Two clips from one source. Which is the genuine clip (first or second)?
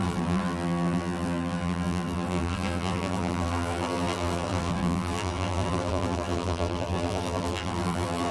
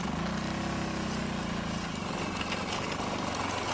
second